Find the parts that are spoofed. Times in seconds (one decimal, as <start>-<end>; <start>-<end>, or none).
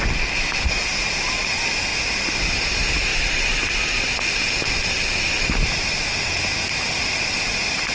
none